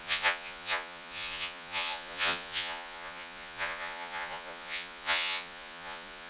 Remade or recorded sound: remade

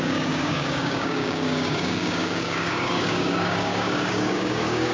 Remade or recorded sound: remade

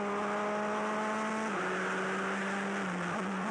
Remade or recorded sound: recorded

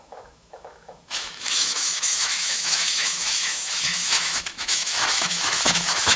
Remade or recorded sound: remade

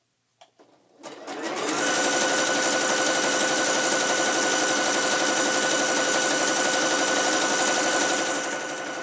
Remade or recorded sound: recorded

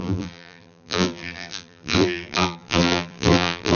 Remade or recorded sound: remade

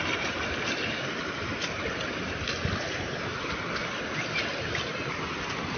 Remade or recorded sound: recorded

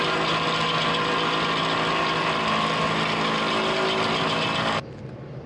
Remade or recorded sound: recorded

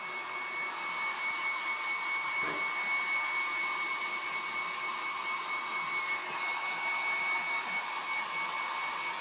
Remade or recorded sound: recorded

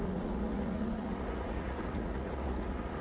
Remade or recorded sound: remade